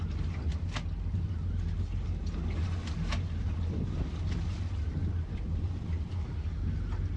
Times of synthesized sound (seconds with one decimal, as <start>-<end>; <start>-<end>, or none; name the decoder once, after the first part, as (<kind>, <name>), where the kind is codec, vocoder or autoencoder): 5.0-6.1 (vocoder, BigVGAN v2)